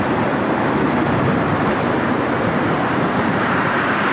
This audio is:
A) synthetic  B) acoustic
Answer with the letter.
A